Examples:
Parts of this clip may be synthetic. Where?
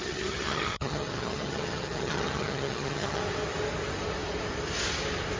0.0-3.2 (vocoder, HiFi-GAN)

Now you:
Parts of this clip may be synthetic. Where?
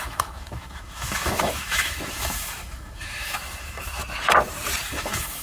0.0-4.0 (autoencoder, DAC-VAE); 4.9-5.4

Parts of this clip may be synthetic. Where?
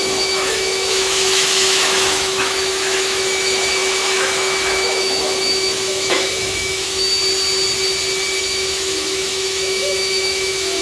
0.0-7.2 (autoencoder, DAC-VAE); 8.4-10.8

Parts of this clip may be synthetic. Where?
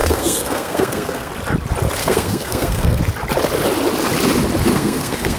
0.0-1.3 (codec, SNAC); 2.0-3.0; 4.7-5.4